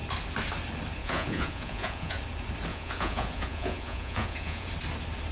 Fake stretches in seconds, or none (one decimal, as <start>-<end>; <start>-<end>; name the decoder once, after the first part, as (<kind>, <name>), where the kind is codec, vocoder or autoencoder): 1.0-2.2 (vocoder, Vocos); 2.7-4.7